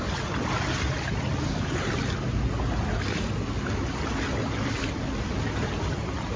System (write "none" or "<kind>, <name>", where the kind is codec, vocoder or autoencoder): none